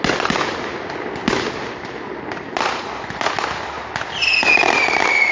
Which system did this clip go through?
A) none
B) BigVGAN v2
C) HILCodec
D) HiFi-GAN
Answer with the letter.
A